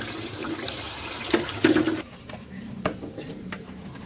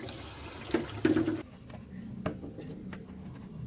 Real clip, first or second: second